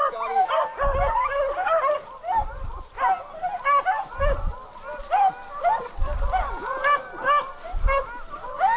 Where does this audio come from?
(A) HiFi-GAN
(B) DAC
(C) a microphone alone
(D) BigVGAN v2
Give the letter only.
C